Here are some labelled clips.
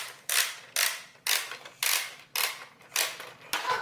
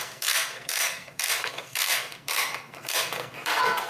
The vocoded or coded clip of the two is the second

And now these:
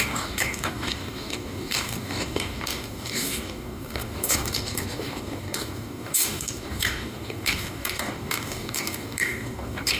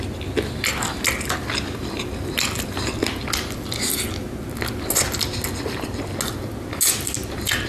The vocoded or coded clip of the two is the first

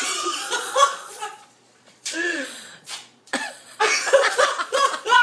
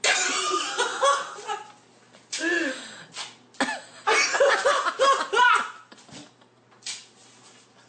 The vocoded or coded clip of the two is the first